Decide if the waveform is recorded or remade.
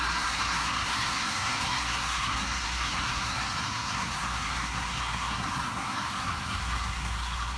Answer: remade